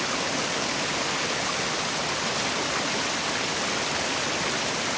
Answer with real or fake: real